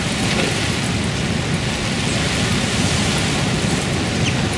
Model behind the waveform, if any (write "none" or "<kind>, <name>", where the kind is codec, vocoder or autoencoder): none